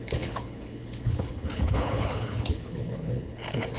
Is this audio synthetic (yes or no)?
yes